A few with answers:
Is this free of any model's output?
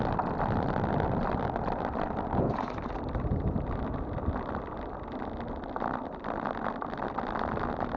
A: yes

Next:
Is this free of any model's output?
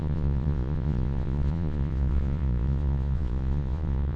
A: no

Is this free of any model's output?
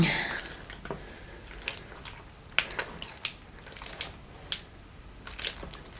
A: yes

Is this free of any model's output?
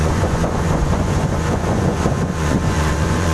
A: no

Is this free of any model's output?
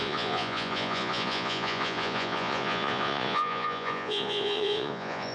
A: no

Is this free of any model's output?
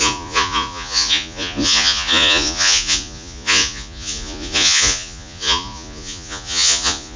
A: no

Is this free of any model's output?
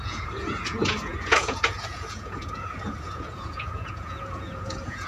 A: no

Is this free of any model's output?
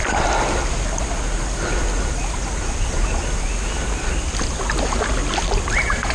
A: yes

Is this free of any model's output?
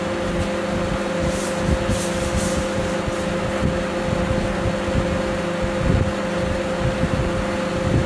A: yes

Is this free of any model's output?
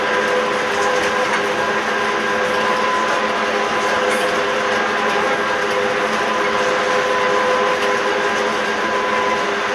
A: yes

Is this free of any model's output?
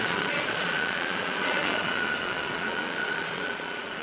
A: no